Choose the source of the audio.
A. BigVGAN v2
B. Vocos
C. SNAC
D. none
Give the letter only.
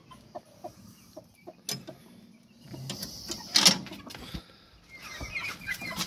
D